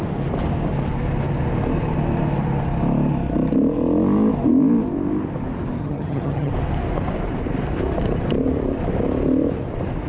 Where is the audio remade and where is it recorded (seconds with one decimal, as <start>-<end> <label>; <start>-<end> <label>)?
0.0-5.8 recorded; 5.8-6.5 remade; 6.5-10.1 recorded